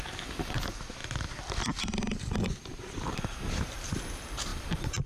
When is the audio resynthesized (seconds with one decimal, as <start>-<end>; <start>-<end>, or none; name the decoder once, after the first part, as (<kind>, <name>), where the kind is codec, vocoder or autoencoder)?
0.0-1.0 (vocoder, BigVGAN v2); 2.8-5.1